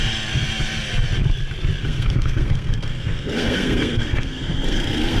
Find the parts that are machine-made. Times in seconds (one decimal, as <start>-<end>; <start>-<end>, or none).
1.8-5.2